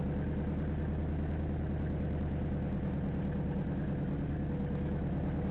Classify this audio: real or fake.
real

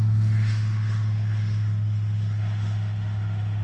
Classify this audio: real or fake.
fake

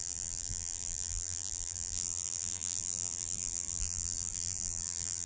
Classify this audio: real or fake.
fake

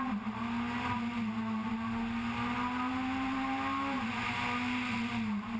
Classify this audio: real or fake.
real